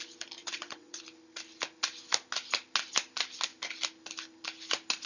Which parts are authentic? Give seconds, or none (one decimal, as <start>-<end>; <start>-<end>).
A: 0.0-0.4; 1.0-5.1